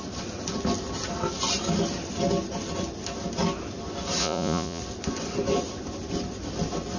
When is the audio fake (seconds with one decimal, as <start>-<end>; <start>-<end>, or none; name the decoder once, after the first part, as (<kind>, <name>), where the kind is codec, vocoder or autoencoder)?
4.2-4.8 (vocoder, Vocos)